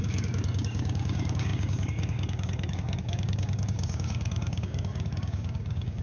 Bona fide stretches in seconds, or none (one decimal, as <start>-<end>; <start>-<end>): none